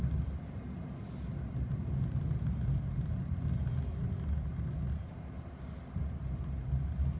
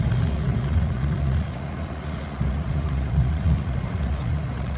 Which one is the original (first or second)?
first